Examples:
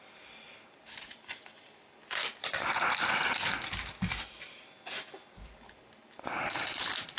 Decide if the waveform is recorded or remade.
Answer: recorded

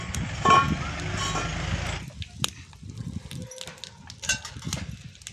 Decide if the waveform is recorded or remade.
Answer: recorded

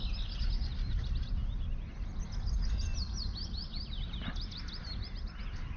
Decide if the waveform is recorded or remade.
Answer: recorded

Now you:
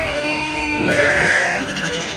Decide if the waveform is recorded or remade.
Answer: remade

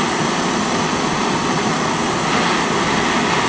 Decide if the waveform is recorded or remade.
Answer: recorded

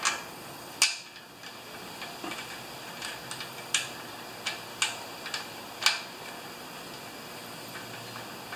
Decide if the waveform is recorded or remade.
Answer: recorded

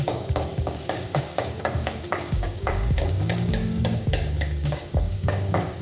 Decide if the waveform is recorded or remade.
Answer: remade